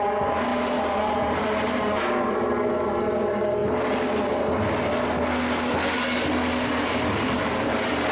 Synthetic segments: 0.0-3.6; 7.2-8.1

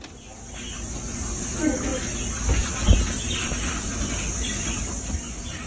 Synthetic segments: none

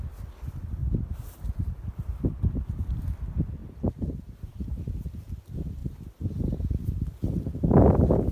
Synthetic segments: 0.8-3.0; 3.6-4.8; 5.8-6.6

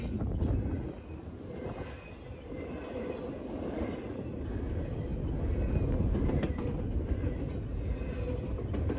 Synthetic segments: none

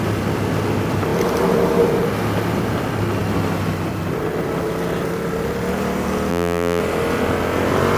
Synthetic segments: 6.3-6.8

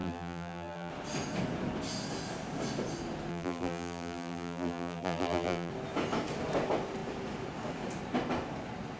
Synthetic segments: 0.0-0.9; 3.3-5.7